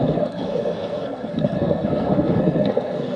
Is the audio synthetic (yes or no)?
yes